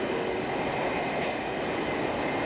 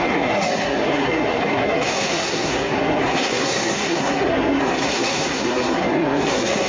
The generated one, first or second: second